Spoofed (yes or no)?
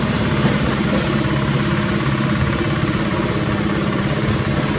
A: yes